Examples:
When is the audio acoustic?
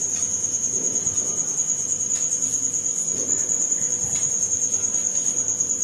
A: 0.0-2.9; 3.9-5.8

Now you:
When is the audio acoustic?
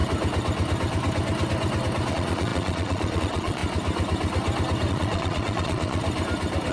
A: 0.0-2.1; 3.6-4.9; 6.0-6.7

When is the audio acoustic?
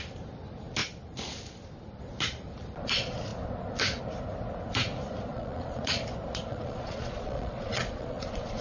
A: 0.0-5.3; 6.0-6.5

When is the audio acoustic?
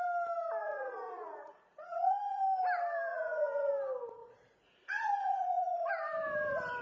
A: 0.0-0.6; 2.4-3.1; 3.7-4.2; 5.9-6.8